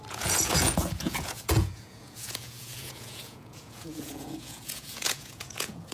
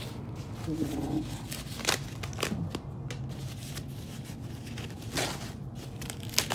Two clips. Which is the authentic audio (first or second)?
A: second